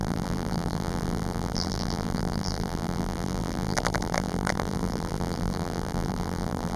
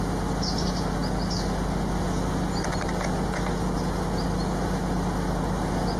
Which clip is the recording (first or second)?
second